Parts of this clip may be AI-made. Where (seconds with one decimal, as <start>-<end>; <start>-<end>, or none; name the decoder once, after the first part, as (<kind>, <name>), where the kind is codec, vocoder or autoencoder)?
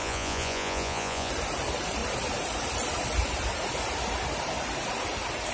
0.0-1.3 (vocoder, Vocos)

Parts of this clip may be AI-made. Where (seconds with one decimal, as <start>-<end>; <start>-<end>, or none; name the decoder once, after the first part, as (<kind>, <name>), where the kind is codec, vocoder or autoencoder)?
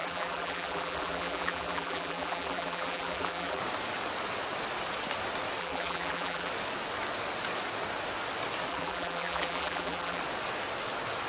0.0-3.6 (vocoder, BigVGAN v2); 5.6-6.5; 8.7-10.2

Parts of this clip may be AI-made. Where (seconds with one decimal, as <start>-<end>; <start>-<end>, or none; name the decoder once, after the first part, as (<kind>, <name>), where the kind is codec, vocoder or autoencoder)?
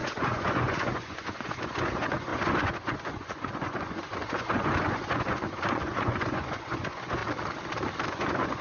0.0-7.2 (vocoder, Vocos); 8.1-8.6